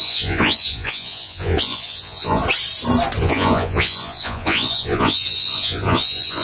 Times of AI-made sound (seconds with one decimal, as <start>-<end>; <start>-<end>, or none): 0.0-2.4; 3.2-6.4